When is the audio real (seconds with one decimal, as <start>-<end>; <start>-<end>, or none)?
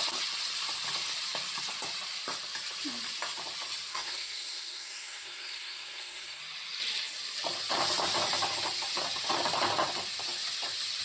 0.0-3.9; 6.4-11.0